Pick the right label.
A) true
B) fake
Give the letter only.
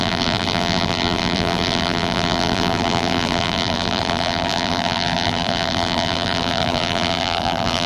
B